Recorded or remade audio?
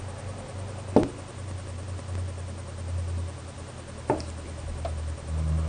recorded